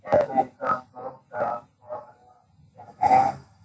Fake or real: real